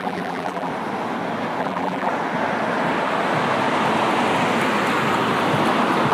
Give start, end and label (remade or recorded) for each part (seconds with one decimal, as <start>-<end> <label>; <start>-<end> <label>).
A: 0.0-0.7 remade; 0.7-1.6 recorded; 1.6-2.1 remade; 2.1-6.1 recorded